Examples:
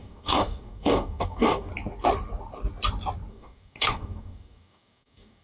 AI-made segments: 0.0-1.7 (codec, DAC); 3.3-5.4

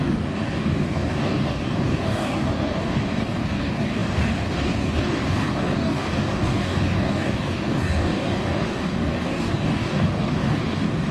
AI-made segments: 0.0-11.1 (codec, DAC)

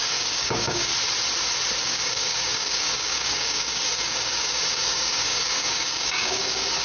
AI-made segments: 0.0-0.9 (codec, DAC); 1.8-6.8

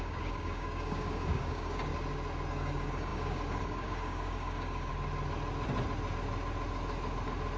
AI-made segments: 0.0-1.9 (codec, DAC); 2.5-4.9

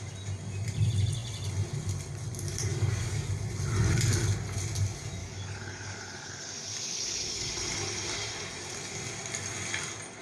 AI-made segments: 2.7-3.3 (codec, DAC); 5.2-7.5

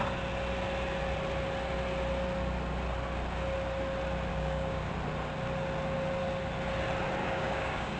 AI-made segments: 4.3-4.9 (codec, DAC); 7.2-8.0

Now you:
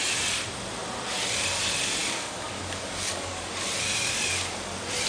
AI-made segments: 2.0-3.5 (codec, DAC)

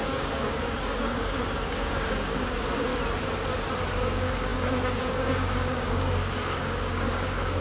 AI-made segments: 0.0-2.9 (codec, DAC); 4.0-7.6